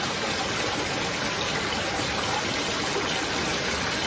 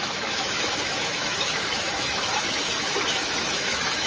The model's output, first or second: second